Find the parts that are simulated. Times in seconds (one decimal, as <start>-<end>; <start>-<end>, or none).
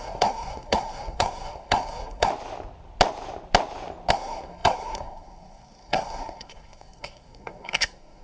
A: 0.0-2.3; 4.1-8.2